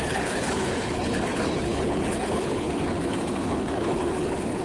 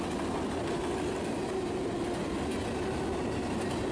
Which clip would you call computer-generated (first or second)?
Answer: first